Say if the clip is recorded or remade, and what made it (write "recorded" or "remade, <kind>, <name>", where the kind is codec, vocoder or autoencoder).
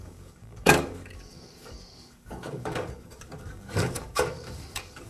remade, codec, DAC